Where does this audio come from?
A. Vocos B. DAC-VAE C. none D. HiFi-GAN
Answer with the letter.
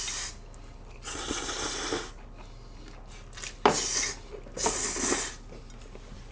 C